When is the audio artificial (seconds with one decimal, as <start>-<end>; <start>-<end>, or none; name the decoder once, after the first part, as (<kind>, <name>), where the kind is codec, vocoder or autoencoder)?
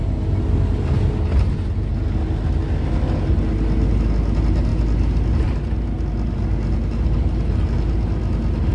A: none